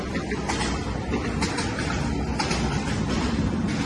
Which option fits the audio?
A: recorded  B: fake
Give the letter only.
B